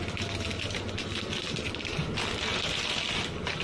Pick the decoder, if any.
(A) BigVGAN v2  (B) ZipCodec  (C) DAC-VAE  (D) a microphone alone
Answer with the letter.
D